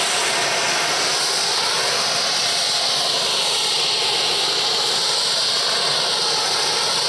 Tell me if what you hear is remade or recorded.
recorded